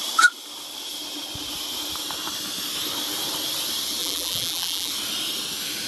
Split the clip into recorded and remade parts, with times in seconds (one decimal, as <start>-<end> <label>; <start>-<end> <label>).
0.0-4.0 recorded; 4.0-4.9 remade; 4.9-5.9 recorded